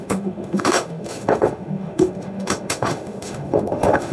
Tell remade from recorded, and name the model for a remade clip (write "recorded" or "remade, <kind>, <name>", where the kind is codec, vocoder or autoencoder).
remade, autoencoder, DAC-VAE